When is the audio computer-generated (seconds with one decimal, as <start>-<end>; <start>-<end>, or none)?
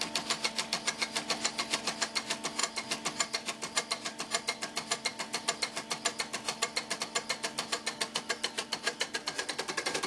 none